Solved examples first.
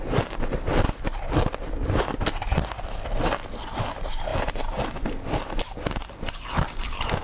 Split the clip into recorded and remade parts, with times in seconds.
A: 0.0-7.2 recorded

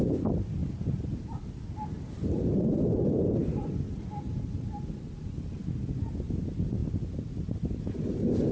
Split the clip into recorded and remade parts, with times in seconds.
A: 0.0-0.6 recorded; 0.6-4.1 remade; 4.1-8.5 recorded

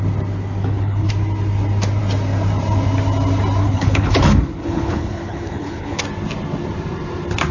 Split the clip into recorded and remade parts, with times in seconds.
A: 0.0-0.6 recorded; 0.6-1.1 remade; 1.1-3.6 recorded; 3.6-6.0 remade; 6.0-7.5 recorded

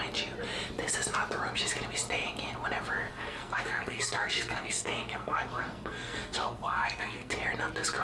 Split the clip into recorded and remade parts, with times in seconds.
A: 0.0-3.1 recorded; 3.1-7.3 remade; 7.3-8.0 recorded

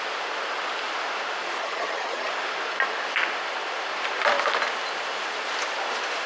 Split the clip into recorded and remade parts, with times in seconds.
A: 0.0-1.6 recorded; 1.6-2.3 remade; 2.3-6.3 recorded